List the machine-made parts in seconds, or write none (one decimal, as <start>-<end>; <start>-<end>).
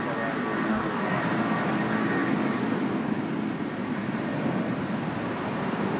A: 0.7-1.2